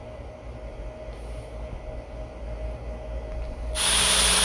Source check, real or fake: real